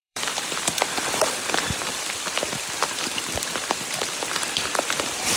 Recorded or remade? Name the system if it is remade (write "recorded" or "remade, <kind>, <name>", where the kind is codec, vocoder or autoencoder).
remade, vocoder, BigVGAN v2